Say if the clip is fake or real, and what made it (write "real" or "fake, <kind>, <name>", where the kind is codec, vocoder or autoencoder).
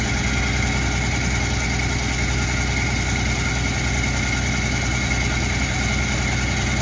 real